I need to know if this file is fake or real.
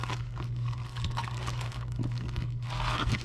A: fake